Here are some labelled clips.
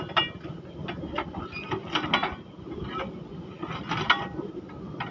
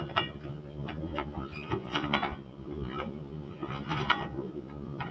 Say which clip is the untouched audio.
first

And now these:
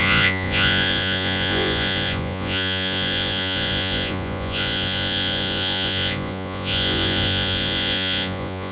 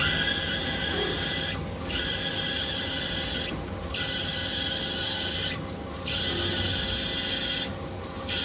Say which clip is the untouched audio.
second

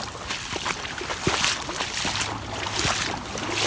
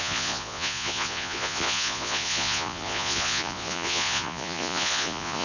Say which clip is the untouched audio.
first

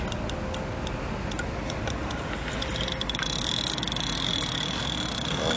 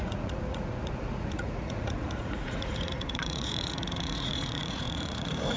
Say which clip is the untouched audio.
first